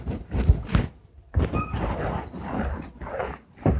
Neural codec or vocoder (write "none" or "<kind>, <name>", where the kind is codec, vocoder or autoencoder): none